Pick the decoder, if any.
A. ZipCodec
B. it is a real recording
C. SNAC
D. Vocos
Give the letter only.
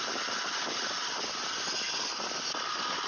B